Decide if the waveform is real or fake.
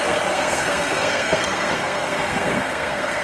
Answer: fake